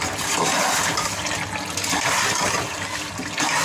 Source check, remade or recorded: recorded